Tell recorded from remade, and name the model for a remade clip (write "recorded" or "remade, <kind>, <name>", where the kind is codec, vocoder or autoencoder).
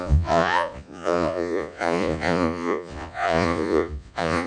remade, vocoder, Vocos